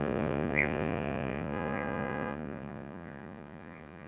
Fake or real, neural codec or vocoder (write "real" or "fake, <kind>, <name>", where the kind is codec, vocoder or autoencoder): fake, vocoder, Vocos